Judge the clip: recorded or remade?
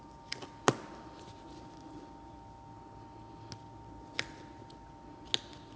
recorded